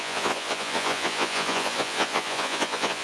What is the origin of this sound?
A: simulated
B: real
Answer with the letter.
A